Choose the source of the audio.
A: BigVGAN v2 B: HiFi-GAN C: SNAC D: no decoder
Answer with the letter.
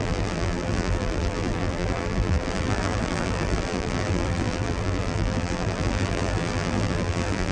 A